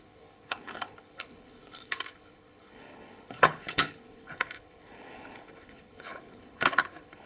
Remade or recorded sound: remade